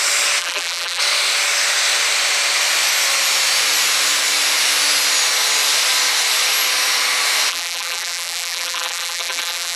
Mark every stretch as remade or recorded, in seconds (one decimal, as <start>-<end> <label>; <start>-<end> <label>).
0.0-0.4 recorded; 0.4-1.0 remade; 1.0-7.5 recorded; 7.5-9.8 remade